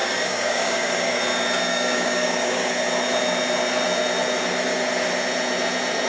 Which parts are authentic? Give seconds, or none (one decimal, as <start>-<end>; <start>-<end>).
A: 1.2-1.7; 2.7-6.1